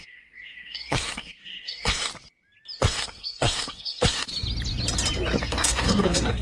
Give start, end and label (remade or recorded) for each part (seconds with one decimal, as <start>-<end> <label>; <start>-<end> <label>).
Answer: 0.0-2.1 remade; 2.1-2.8 recorded; 2.8-4.3 remade; 4.3-5.4 recorded; 5.4-6.4 remade